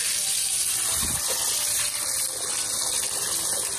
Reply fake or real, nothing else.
fake